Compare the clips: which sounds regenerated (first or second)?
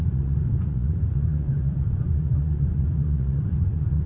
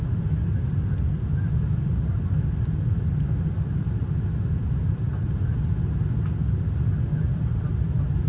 first